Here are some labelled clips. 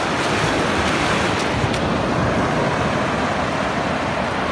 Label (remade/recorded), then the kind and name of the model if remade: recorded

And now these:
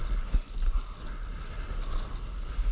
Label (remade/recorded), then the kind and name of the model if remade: recorded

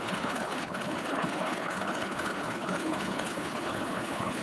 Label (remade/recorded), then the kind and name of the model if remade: remade, codec, HILCodec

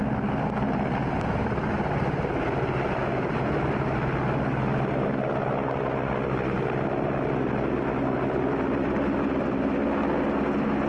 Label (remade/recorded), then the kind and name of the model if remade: recorded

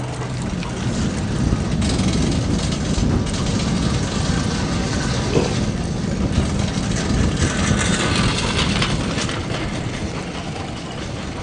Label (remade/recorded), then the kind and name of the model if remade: recorded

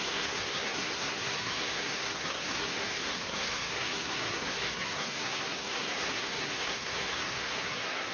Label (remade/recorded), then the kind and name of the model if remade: remade, codec, SNAC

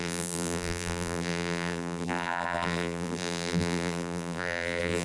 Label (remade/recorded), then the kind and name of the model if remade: remade, vocoder, BigVGAN v2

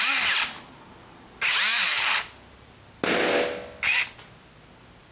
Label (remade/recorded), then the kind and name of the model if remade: recorded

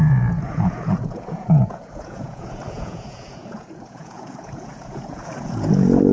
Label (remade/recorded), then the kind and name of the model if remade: remade, vocoder, Vocos